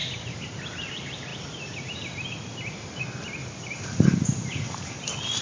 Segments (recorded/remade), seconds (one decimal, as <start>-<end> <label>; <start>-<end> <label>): 0.0-3.4 recorded; 3.4-5.4 remade